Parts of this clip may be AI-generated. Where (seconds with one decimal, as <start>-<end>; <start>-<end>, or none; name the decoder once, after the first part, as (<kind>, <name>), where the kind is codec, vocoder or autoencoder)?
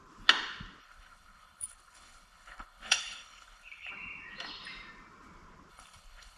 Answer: 0.8-3.9 (codec, HILCodec); 5.7-6.4